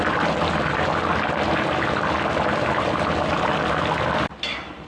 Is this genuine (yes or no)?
yes